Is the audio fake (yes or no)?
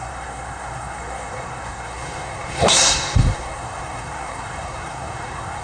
yes